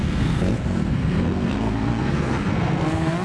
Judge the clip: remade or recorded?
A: remade